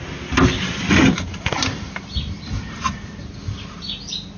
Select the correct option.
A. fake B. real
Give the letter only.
B